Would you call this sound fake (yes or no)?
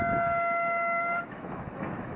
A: yes